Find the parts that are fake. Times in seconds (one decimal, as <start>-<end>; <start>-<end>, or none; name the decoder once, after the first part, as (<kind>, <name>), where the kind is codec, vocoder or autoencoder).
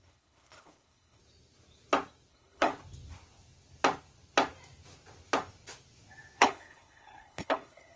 0.0-1.2 (codec, HILCodec); 2.3-2.7; 6.4-8.0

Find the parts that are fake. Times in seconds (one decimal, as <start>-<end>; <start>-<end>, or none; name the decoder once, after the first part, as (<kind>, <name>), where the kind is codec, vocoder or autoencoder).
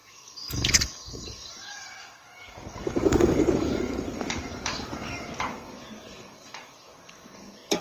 0.0-7.8 (codec, DAC)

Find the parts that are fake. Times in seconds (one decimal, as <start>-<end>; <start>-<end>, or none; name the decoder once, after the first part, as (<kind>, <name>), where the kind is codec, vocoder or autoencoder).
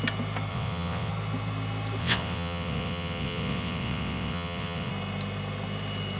0.5-1.1 (vocoder, WaveNeXt); 2.0-4.9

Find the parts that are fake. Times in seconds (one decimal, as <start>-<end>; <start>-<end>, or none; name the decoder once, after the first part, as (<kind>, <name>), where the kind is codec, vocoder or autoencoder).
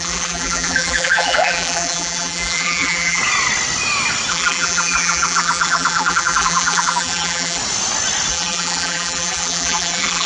0.0-3.2 (vocoder, BigVGAN v2); 4.3-7.6; 8.3-10.3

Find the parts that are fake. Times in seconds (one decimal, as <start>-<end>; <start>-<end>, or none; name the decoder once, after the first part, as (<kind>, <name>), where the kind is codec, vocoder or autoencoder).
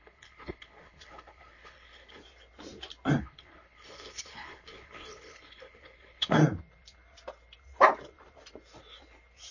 0.0-2.2 (codec, HILCodec); 3.2-6.4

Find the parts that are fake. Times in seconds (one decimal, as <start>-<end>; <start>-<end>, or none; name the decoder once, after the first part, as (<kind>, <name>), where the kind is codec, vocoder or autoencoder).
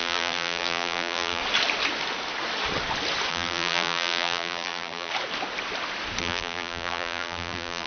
0.0-1.4 (vocoder, BigVGAN v2); 3.3-5.1; 6.2-7.9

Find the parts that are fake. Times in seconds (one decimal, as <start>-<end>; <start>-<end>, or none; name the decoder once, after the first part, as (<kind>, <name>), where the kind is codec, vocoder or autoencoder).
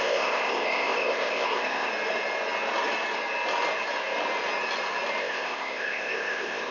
0.0-1.9 (codec, ZipCodec); 5.2-6.7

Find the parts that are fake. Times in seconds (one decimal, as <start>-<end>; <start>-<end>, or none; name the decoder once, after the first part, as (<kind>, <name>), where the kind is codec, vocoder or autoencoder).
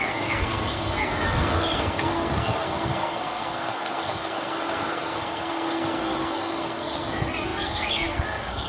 0.0-8.7 (codec, SNAC)